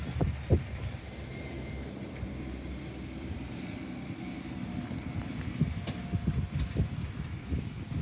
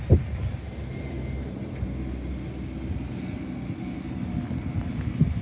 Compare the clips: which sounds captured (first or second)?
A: second